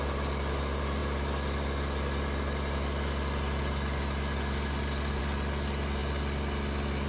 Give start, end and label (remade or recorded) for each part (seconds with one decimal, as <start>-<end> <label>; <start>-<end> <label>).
0.0-7.1 recorded